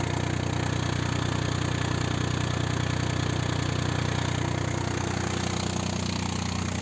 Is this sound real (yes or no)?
yes